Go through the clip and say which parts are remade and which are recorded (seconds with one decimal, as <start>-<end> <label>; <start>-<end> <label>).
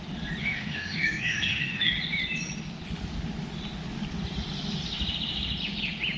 0.0-0.4 recorded; 0.4-1.9 remade; 1.9-6.2 recorded